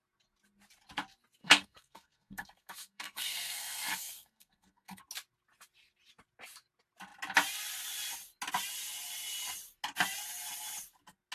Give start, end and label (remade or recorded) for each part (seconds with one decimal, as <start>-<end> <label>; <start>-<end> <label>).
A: 0.0-1.4 recorded; 1.4-5.0 remade; 5.0-11.3 recorded